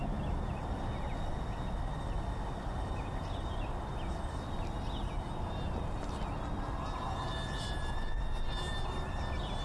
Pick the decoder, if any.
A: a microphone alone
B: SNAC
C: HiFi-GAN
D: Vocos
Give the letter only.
A